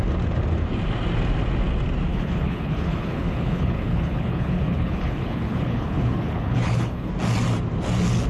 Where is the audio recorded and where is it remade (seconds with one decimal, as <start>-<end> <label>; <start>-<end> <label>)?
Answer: 0.0-2.1 recorded; 2.1-7.1 remade; 7.1-8.3 recorded